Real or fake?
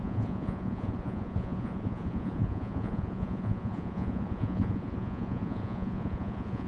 fake